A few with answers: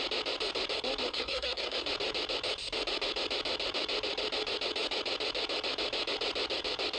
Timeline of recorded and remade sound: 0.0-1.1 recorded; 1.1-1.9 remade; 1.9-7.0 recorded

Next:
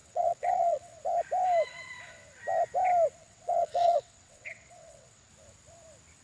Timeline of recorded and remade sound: 0.0-1.0 remade; 1.0-3.2 recorded; 3.2-5.3 remade; 5.3-6.2 recorded

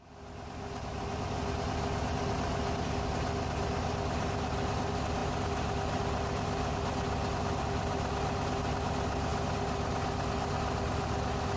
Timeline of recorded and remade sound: 0.0-11.6 recorded